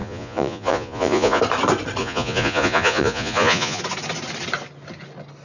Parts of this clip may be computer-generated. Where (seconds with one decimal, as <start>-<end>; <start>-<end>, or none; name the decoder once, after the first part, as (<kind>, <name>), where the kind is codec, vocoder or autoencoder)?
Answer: 0.0-1.4 (vocoder, Vocos); 2.0-3.8